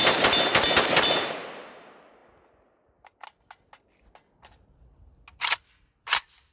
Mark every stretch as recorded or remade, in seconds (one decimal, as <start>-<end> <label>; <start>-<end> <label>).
0.0-1.0 recorded; 1.0-2.2 remade; 2.2-5.8 recorded; 5.8-6.5 remade